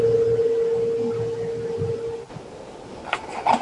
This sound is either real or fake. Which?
real